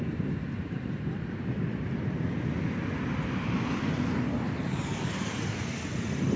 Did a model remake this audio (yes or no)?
no